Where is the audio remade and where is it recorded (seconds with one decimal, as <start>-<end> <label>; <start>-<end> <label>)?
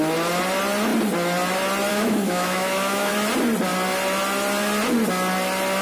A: 0.0-1.9 recorded; 1.9-3.1 remade; 3.1-5.8 recorded